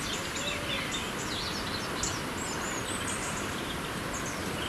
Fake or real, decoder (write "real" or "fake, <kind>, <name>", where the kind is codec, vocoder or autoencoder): real